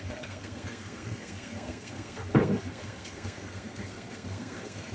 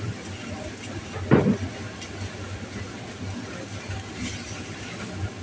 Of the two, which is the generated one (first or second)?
first